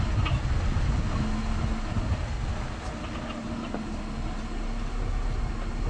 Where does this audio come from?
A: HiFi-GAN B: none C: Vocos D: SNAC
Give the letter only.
B